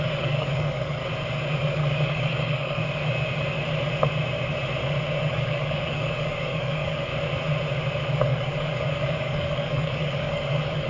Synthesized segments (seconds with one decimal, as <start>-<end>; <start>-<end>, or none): 0.0-1.0; 1.7-2.8; 5.2-7.1; 8.2-10.9